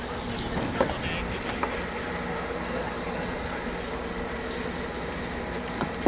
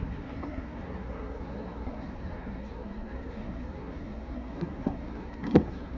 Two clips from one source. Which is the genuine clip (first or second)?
first